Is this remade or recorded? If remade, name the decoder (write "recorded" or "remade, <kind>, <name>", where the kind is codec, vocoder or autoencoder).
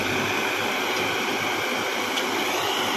recorded